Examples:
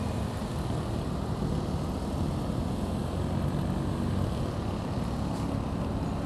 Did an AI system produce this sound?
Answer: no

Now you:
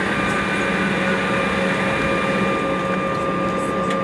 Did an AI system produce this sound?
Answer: no